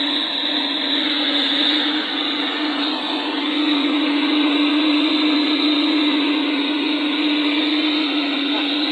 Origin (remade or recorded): remade